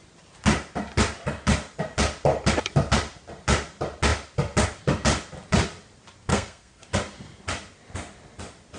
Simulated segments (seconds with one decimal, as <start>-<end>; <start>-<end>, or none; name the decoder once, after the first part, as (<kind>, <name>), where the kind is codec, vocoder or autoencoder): 6.3-6.9 (codec, SNAC)